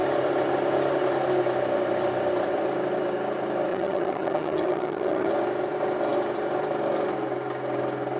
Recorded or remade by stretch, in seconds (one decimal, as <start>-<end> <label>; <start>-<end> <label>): 0.0-3.7 recorded; 3.7-5.3 remade; 5.3-8.2 recorded